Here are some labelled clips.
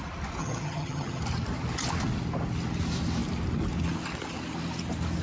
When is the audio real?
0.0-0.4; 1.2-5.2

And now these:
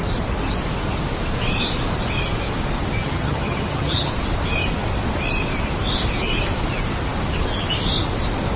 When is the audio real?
0.0-3.0; 4.1-8.6

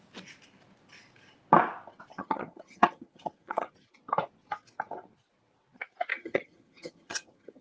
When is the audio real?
0.0-2.1; 3.7-6.1

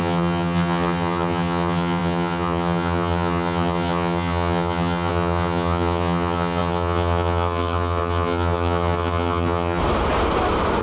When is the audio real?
9.8-10.8

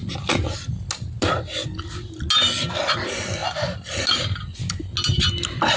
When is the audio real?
0.0-5.8

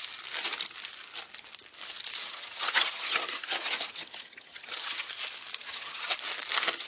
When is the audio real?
0.0-2.2; 5.1-5.6; 6.1-6.9

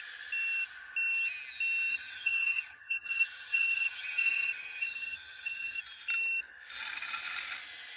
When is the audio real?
0.0-1.9; 5.8-8.0

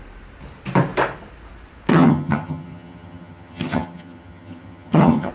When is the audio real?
0.0-1.9